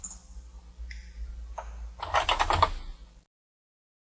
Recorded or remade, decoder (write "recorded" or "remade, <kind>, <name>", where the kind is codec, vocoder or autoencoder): recorded